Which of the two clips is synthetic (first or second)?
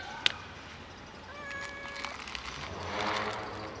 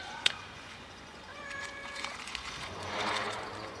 second